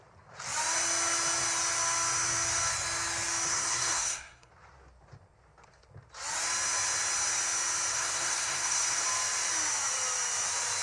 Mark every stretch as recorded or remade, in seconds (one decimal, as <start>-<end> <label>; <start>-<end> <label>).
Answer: 0.0-3.5 recorded; 3.5-4.5 remade; 4.5-7.9 recorded; 7.9-9.0 remade; 9.0-10.8 recorded